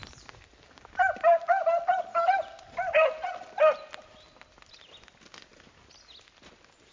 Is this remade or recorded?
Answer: recorded